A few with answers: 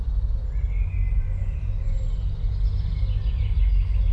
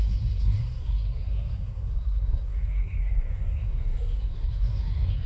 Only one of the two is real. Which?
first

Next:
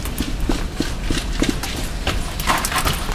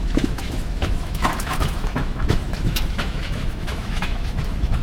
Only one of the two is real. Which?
first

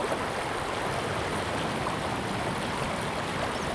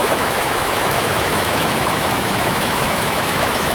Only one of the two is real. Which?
first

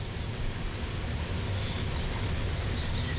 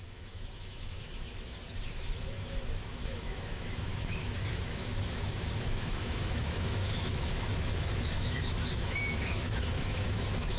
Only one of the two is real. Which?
first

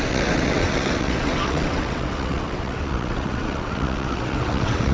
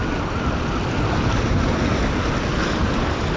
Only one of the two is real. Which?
second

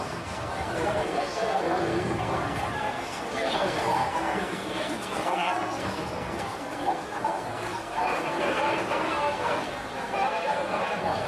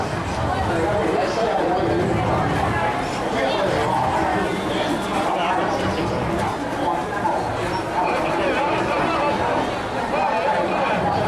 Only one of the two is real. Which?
second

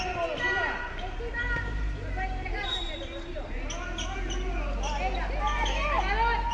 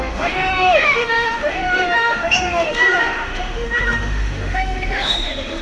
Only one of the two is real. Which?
first